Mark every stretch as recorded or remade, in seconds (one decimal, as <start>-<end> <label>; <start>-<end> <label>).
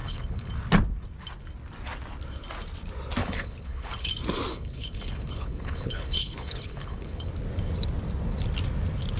0.0-0.5 remade; 0.5-3.2 recorded; 3.2-4.1 remade; 4.1-4.5 recorded; 4.5-7.3 remade; 7.3-9.2 recorded